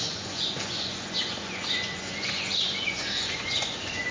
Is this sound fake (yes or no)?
yes